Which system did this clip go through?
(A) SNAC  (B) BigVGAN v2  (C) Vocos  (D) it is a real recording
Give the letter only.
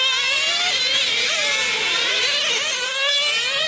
D